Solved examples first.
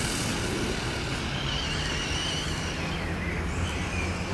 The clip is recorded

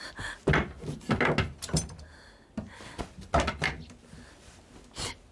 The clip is recorded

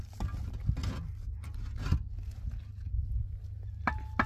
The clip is recorded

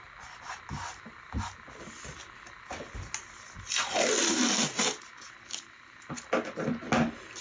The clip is recorded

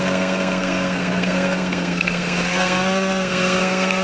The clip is remade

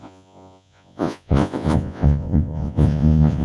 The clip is remade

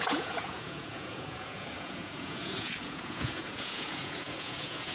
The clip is remade